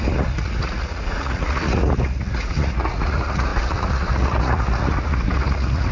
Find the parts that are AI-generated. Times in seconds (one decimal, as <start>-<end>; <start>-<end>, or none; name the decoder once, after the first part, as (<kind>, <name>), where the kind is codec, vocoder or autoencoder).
0.0-5.9 (vocoder, Vocos)

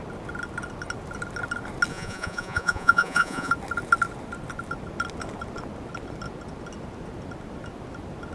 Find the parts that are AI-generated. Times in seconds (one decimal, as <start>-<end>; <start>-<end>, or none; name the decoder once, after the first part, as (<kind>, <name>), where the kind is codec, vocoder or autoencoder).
1.9-3.5 (vocoder, Vocos)

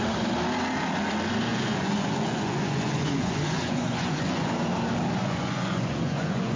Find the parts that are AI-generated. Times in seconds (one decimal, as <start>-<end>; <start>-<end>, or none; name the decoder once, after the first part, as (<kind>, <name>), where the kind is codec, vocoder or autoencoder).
1.5-4.5 (vocoder, Vocos); 5.2-6.6

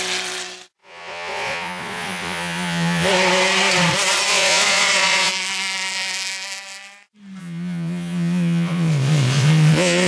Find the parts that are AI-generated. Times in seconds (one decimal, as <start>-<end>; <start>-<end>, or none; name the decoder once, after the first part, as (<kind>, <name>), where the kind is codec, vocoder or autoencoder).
0.8-3.1 (vocoder, Vocos); 4.3-5.3; 7.4-10.1

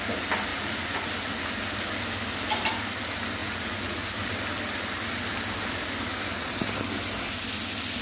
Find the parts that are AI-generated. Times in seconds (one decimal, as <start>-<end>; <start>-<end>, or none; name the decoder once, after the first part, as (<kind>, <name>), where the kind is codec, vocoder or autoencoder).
0.5-1.1 (vocoder, Vocos); 3.4-4.1

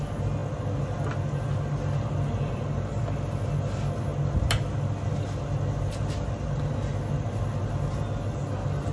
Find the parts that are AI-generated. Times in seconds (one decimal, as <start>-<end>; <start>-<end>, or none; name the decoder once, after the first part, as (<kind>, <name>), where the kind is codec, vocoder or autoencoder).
none